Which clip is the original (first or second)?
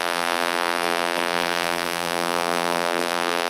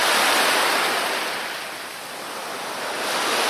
second